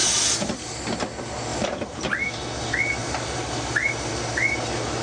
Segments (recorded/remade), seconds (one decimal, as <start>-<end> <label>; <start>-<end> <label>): 0.0-1.5 recorded; 1.5-2.0 remade; 2.0-3.0 recorded; 3.0-4.1 remade; 4.1-5.0 recorded